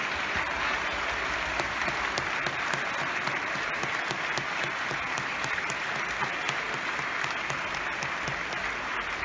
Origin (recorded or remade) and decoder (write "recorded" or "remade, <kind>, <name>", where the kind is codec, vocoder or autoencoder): recorded